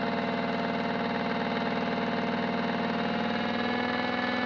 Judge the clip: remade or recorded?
recorded